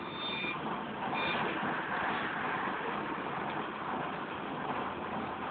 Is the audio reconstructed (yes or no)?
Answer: no